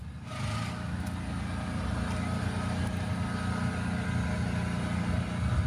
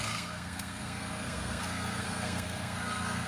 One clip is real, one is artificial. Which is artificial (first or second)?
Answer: second